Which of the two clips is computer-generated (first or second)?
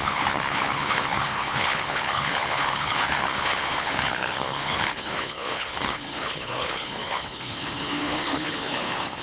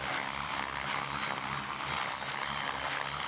first